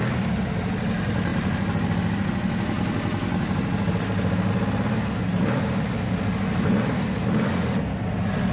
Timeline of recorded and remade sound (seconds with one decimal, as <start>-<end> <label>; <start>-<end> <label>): 0.0-8.5 recorded